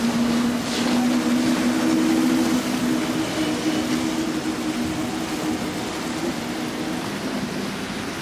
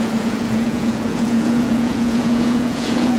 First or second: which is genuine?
first